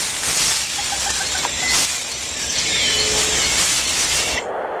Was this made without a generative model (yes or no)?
yes